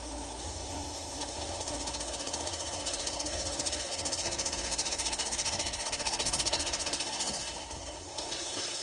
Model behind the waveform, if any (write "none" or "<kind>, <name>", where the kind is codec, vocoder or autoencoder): codec, SNAC